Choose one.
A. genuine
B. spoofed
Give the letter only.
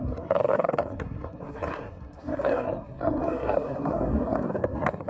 B